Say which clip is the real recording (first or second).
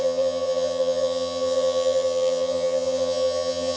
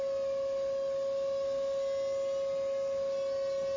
second